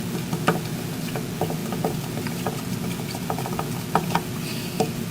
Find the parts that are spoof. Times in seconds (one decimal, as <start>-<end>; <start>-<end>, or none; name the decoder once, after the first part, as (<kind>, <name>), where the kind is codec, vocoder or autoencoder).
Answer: none